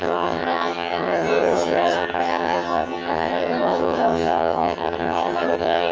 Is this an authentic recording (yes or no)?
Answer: no